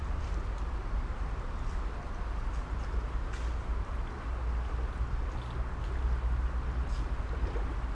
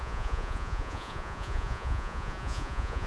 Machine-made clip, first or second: second